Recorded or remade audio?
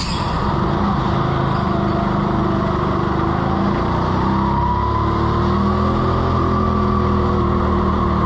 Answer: recorded